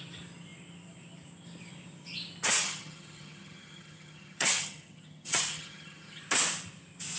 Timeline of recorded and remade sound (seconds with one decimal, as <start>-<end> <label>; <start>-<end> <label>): 0.0-2.6 recorded; 2.6-6.2 remade; 6.2-7.2 recorded